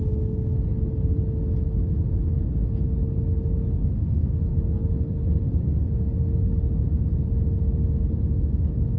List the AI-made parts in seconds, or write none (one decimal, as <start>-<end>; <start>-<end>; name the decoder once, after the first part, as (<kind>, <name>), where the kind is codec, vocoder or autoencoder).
none